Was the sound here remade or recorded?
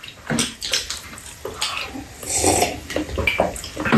recorded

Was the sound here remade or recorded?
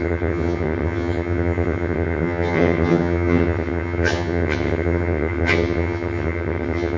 remade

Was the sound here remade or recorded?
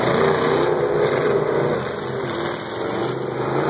recorded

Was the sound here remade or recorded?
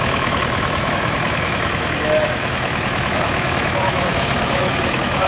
remade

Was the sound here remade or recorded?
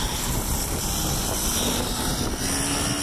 recorded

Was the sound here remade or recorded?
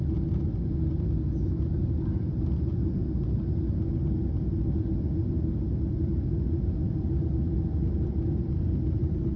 recorded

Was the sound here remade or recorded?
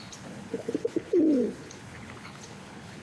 remade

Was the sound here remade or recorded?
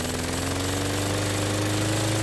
recorded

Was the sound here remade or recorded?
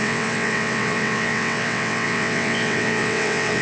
remade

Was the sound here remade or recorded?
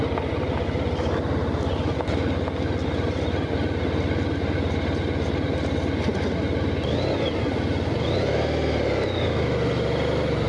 recorded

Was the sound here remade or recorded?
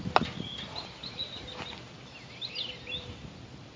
recorded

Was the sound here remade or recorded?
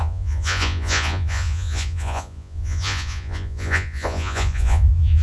remade